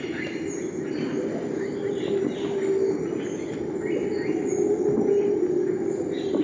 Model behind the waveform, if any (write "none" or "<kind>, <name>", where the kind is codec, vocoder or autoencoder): none